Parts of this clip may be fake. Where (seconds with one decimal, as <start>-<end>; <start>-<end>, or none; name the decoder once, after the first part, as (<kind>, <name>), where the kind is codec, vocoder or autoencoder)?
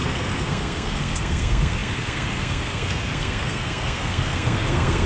0.0-5.1 (codec, SNAC)